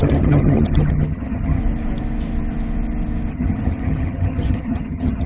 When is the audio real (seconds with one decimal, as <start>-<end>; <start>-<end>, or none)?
1.6-3.3